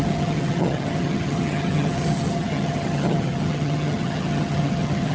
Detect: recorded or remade remade